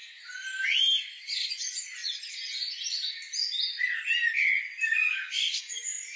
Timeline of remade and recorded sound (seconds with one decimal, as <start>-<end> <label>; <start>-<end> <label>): 0.0-6.2 recorded